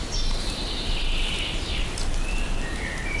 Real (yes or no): yes